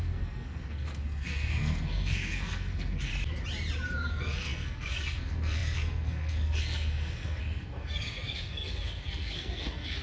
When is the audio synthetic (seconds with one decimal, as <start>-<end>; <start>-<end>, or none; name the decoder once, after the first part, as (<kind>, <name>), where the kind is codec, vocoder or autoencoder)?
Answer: 0.0-3.1 (codec, SNAC); 4.1-10.0